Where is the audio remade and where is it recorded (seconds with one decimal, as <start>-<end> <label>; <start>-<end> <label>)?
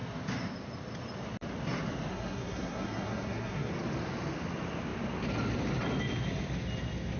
0.0-2.1 recorded; 2.1-3.7 remade; 3.7-7.2 recorded